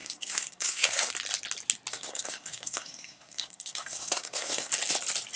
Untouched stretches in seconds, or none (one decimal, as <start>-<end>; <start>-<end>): 1.1-1.9; 4.7-5.4